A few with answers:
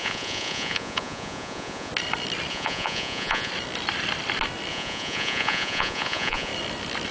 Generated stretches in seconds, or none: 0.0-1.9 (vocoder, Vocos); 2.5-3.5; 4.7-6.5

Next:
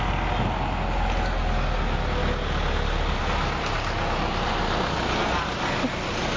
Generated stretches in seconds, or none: none

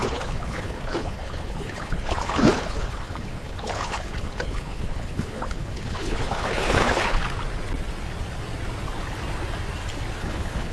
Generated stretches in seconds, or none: 0.0-7.2 (codec, HILCodec); 10.2-10.7